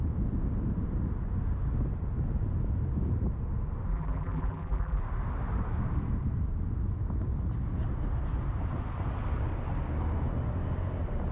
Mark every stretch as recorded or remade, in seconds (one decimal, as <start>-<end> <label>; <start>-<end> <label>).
0.0-3.9 recorded; 3.9-5.0 remade; 5.0-11.3 recorded

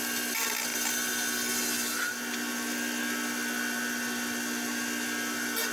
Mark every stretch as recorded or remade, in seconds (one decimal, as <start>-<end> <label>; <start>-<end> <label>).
0.0-5.7 recorded

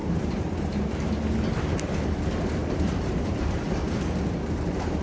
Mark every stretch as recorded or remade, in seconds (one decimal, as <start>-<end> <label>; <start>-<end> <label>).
0.0-1.1 remade; 1.1-2.6 recorded; 2.6-3.6 remade; 3.6-5.0 recorded

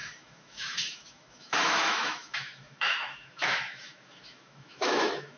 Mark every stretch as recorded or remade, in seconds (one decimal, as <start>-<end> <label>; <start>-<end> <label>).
0.0-5.4 remade

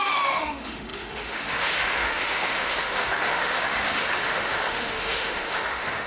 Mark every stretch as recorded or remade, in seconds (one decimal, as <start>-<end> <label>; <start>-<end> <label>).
0.0-6.1 remade

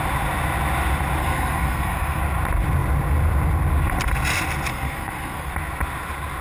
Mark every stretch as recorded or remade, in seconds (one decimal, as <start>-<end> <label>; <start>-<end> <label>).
0.0-1.2 recorded; 1.2-2.2 remade; 2.2-4.7 recorded; 4.7-5.5 remade; 5.5-6.4 recorded